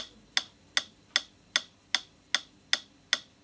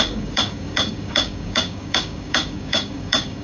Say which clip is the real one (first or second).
first